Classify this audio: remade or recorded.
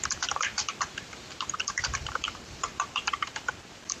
remade